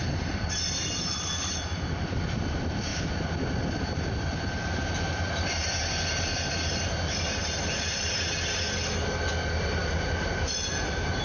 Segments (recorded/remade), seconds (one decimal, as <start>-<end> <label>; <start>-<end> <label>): 0.0-11.2 recorded